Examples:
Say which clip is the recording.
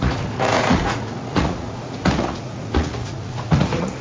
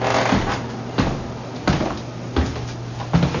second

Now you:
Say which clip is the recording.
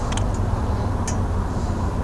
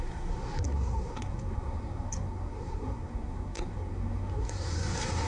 first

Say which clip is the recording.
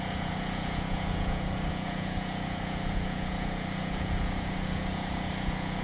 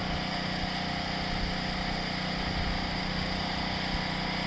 second